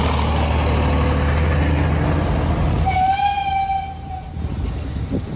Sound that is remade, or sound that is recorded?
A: recorded